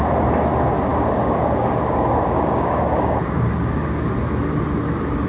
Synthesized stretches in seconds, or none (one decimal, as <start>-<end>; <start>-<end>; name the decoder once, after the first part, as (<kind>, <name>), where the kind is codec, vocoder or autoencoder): 0.9-4.1 (codec, DAC)